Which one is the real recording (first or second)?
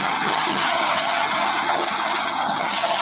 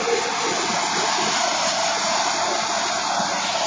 second